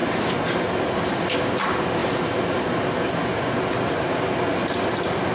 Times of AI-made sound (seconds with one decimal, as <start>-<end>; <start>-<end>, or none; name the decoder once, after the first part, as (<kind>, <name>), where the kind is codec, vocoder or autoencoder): 2.0-2.6 (vocoder, BigVGAN v2)